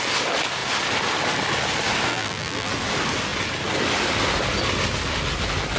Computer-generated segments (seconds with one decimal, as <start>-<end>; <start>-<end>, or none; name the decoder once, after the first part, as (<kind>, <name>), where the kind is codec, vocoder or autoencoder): 2.1-2.7 (vocoder, BigVGAN v2)